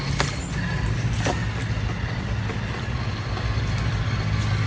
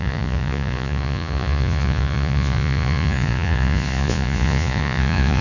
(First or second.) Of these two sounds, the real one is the first